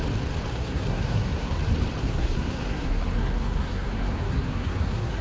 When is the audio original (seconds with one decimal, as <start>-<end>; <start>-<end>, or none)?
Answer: 0.0-0.5; 1.6-2.0